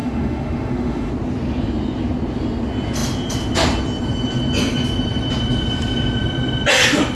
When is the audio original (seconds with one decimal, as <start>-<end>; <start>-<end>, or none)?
1.1-7.1

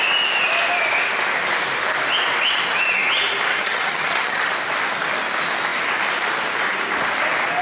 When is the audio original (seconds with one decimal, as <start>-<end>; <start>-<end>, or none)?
0.0-3.5; 4.4-7.6

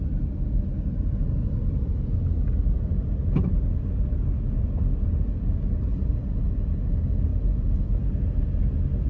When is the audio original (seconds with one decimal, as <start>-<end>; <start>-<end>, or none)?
0.0-9.1

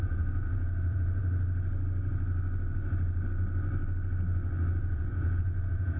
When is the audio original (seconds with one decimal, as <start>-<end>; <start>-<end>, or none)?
1.2-4.8

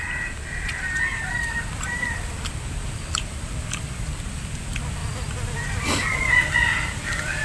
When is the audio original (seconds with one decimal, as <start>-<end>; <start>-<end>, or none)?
5.0-5.8

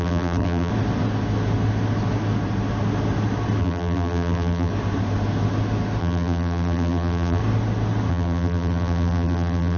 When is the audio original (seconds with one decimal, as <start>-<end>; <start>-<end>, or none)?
0.7-3.6; 4.7-6.0; 7.4-8.1